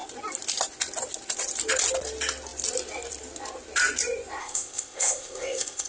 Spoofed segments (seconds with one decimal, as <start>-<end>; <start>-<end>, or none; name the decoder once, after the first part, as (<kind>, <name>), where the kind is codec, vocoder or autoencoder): 4.4-5.9 (codec, ZipCodec)